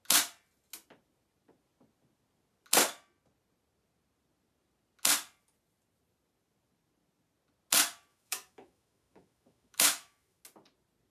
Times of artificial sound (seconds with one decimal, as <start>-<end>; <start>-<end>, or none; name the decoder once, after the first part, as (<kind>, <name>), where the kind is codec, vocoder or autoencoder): 8.1-10.4 (autoencoder, DAC-VAE)